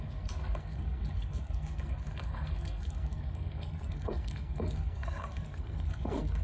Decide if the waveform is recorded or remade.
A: remade